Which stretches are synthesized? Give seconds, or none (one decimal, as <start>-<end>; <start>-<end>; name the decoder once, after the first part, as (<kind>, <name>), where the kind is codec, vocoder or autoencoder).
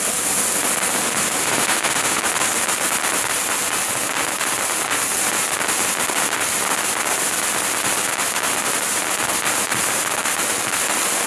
1.4-2.2 (autoencoder, DAC-VAE)